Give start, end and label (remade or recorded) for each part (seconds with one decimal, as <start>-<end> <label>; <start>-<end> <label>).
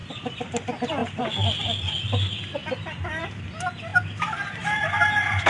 0.0-3.9 recorded; 3.9-4.6 remade; 4.6-5.5 recorded